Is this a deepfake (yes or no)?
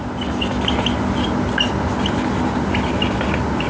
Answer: no